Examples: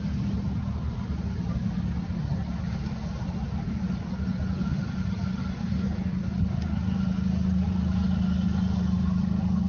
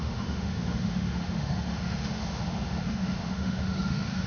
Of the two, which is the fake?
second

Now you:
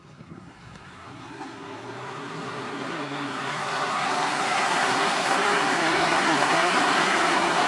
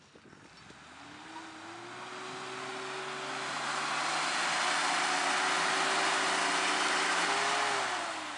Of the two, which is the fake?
first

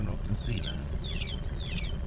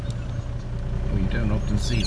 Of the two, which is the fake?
first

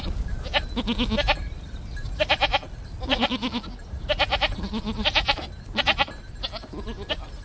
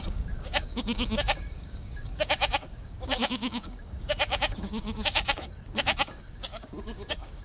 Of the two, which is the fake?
second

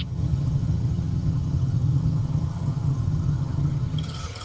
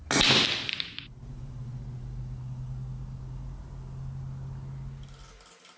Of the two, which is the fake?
first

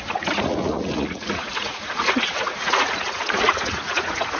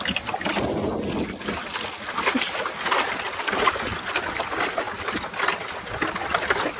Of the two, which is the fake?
first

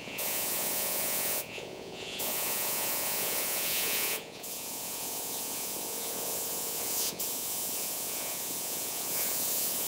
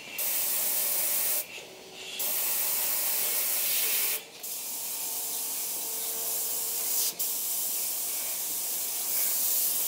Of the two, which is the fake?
first